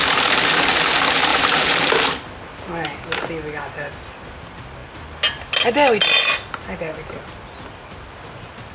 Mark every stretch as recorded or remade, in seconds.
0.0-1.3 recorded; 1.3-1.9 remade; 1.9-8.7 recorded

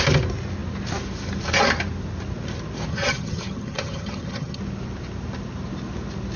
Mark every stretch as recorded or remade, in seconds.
0.0-2.9 recorded; 2.9-4.6 remade; 4.6-6.4 recorded